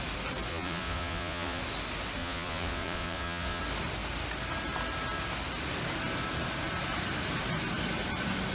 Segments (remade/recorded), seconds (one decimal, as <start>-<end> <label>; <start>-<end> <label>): 0.0-0.5 recorded; 0.5-1.6 remade; 1.6-2.2 recorded; 2.2-3.6 remade; 3.6-8.5 recorded